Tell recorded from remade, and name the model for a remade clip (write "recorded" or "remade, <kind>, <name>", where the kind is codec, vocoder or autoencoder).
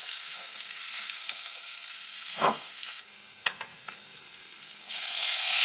remade, codec, SNAC